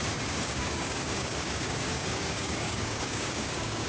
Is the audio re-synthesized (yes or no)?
yes